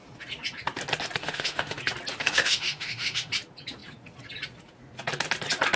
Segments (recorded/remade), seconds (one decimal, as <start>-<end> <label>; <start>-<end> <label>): 0.0-1.2 recorded; 1.2-1.8 remade; 1.8-2.2 recorded; 2.2-3.3 remade; 3.3-5.8 recorded